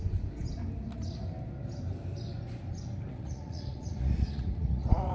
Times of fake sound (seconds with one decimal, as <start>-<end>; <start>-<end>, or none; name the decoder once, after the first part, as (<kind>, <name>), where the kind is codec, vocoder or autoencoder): 3.1-5.1 (vocoder, Vocos)